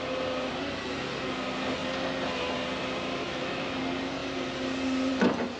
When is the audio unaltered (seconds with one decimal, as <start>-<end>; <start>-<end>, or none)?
0.0-3.2; 3.8-5.6

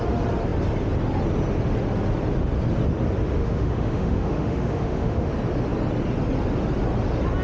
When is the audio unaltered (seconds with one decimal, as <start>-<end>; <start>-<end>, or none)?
0.0-3.4; 5.3-7.4

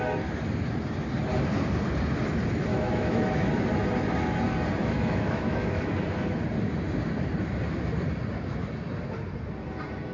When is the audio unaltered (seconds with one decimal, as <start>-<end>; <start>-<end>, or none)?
0.0-2.7; 3.5-4.8; 5.9-10.1

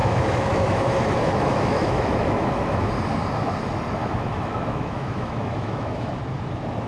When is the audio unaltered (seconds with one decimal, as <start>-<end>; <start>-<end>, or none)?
2.9-4.0; 6.2-6.9

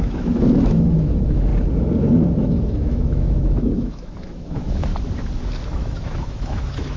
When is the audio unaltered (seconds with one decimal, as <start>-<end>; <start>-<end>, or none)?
1.5-2.4; 4.9-5.7